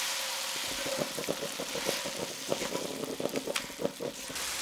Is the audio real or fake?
real